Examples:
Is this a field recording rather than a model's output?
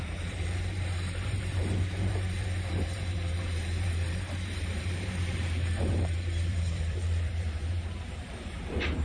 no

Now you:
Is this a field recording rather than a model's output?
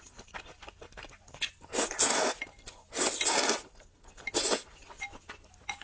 yes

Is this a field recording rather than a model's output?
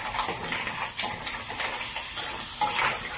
yes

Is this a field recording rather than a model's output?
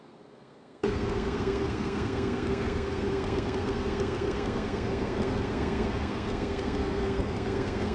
no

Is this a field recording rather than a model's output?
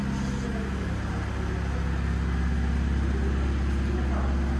yes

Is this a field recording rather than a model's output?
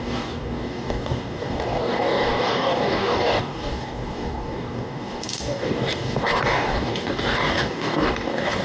no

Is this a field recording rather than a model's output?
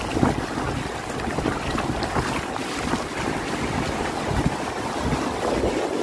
yes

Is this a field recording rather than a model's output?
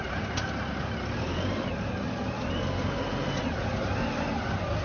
yes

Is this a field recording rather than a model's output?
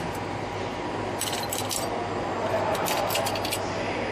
yes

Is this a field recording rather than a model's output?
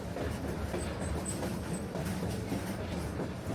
no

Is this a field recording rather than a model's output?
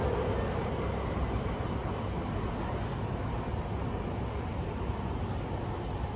yes